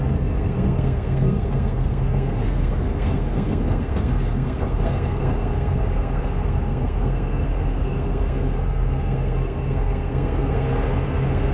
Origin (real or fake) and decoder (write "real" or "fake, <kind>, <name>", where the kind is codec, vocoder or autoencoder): fake, codec, SNAC